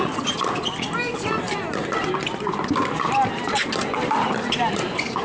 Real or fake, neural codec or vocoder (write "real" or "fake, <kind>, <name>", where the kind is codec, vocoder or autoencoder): real